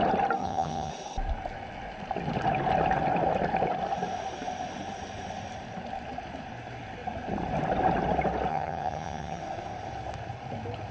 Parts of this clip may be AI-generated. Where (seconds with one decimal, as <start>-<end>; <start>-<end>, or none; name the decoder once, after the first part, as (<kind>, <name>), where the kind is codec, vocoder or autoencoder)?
0.4-0.9 (vocoder, HiFi-GAN); 8.5-9.4